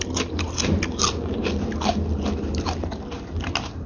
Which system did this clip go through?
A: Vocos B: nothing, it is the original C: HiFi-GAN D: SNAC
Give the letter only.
B